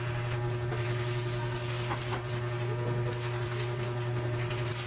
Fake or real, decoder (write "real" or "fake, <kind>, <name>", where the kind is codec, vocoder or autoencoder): real